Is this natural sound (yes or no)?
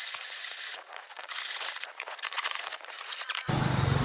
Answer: no